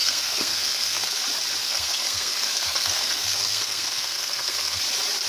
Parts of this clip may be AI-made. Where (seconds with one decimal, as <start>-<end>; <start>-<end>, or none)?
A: 0.0-1.2; 1.6-4.8